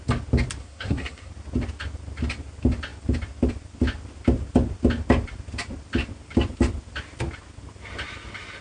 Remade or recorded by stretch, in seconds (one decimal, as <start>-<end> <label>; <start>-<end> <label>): 0.0-0.6 recorded; 0.6-1.3 remade; 1.3-8.6 recorded